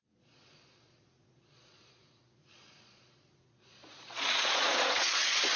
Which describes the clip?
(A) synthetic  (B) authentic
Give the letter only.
A